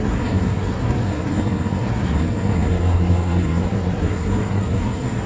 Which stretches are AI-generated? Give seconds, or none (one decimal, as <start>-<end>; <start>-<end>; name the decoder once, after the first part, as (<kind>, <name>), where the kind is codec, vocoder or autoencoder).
0.0-5.3 (codec, SNAC)